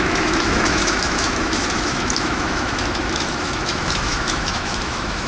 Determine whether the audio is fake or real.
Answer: fake